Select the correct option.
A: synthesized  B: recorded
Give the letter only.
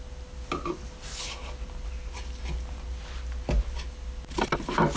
B